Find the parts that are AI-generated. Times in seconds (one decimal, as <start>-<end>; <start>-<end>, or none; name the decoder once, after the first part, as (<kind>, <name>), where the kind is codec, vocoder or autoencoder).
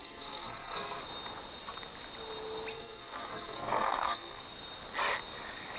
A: 0.0-1.0 (codec, SNAC); 2.7-4.4